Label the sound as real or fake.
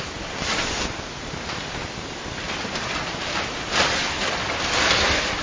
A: fake